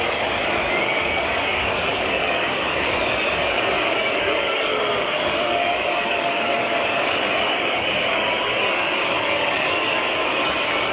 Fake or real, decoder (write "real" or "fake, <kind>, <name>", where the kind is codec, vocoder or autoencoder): fake, codec, DAC